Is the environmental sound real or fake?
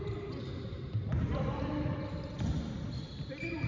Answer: real